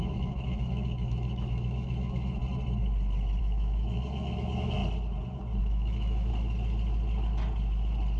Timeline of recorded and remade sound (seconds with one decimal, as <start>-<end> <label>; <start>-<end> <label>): 0.0-2.4 remade; 2.4-3.4 recorded; 3.4-4.8 remade; 4.8-5.6 recorded; 5.6-6.3 remade; 6.3-8.2 recorded